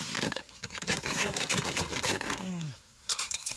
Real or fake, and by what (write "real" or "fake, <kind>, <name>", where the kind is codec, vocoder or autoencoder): fake, codec, SNAC